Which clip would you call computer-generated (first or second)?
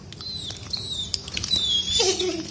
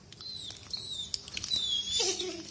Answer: first